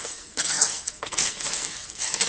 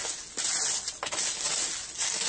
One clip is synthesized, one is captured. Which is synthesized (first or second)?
first